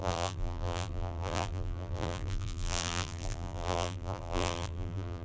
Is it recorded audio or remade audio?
remade